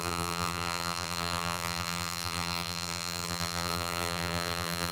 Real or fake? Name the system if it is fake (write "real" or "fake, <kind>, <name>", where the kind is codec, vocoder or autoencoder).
fake, vocoder, BigVGAN v2